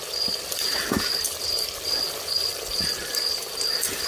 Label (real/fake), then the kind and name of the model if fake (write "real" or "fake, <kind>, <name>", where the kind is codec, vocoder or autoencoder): real